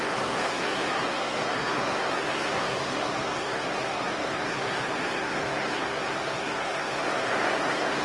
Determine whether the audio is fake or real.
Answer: fake